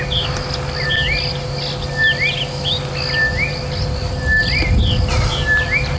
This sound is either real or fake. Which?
real